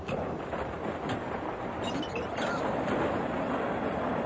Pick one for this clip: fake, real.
real